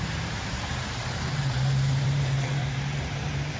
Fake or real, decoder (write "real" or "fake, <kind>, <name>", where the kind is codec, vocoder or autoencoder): fake, vocoder, BigVGAN v2